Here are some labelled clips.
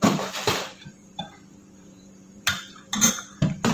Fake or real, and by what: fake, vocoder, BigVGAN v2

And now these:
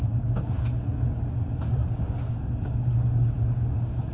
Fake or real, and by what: fake, codec, DAC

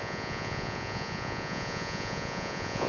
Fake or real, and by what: fake, vocoder, Vocos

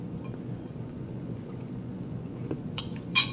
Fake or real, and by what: fake, vocoder, Vocos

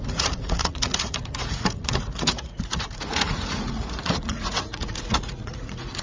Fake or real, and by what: fake, vocoder, Vocos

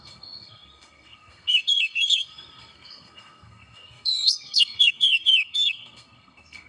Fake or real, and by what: fake, codec, SNAC